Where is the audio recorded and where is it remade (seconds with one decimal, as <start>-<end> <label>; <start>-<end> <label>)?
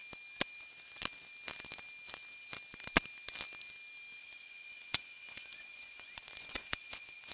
0.0-4.2 recorded; 4.2-7.3 remade